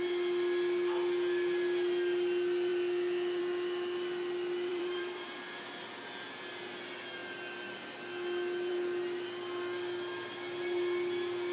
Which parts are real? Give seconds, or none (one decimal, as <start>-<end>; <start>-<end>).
0.0-4.7; 5.3-11.5